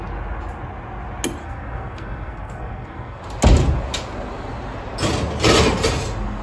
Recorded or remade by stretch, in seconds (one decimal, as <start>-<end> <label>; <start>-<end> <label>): 0.0-1.4 recorded; 1.4-3.2 remade; 3.2-6.4 recorded